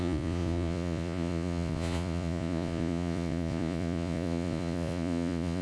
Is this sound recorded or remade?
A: remade